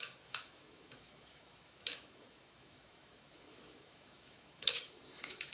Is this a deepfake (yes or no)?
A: yes